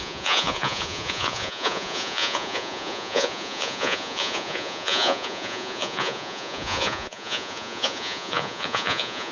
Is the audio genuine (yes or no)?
no